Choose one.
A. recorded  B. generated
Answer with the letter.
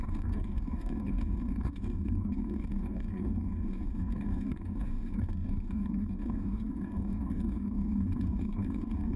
B